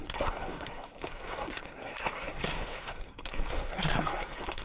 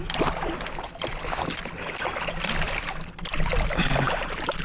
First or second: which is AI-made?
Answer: first